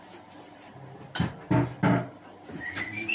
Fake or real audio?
real